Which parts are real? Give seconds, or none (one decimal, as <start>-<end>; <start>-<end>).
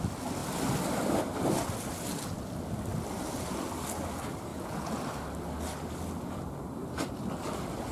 0.0-4.5; 5.0-7.9